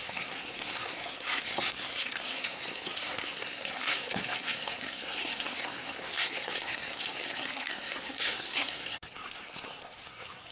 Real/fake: fake